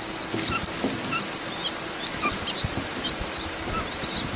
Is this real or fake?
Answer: real